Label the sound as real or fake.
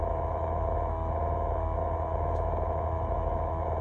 fake